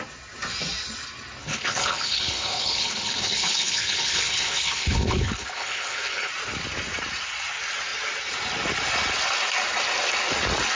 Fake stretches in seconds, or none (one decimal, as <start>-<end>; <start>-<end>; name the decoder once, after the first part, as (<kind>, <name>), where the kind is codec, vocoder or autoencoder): 1.4-6.3 (codec, HILCodec)